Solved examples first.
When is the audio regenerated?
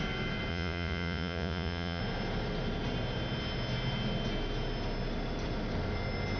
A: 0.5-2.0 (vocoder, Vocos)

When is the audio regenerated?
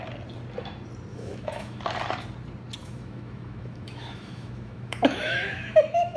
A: 1.1-1.8 (autoencoder, DAC-VAE); 2.8-6.2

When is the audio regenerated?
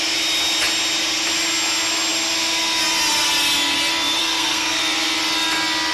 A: 4.2-4.8 (codec, SNAC)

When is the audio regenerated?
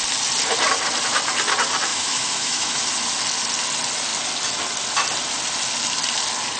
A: 1.9-2.9 (autoencoder, DAC-VAE)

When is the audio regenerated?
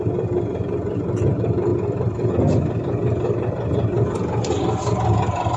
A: none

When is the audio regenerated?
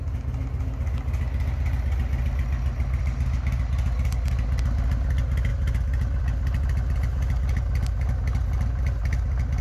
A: none